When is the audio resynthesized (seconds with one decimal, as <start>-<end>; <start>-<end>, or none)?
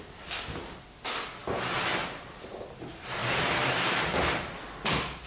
none